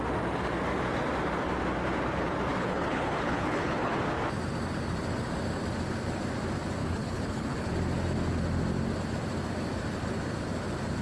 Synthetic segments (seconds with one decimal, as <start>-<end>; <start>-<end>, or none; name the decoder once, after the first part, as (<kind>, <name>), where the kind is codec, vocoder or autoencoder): 2.5-4.0 (codec, HILCodec); 6.8-7.7